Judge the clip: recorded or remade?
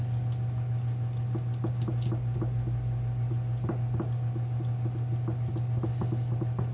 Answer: recorded